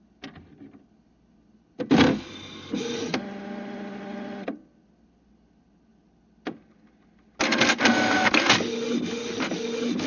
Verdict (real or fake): real